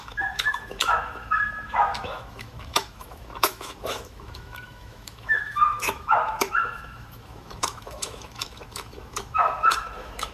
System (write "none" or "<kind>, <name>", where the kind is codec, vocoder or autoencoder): autoencoder, DAC-VAE